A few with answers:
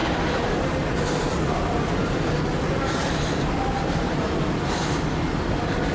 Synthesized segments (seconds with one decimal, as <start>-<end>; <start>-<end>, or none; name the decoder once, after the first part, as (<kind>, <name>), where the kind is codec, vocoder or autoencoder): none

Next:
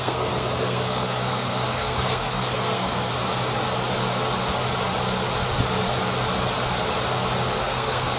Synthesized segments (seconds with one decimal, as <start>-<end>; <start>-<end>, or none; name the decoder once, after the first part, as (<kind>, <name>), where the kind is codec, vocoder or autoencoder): 0.0-3.1 (codec, SNAC); 7.6-8.2

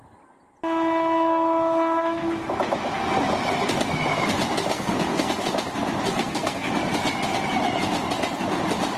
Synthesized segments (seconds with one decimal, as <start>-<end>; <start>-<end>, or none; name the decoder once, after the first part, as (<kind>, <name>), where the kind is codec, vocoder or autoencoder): 4.7-5.3 (codec, SNAC); 6.1-6.7